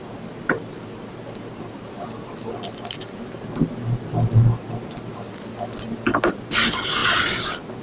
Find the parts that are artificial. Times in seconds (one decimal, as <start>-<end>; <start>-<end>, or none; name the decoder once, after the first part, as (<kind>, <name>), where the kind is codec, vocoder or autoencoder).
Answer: none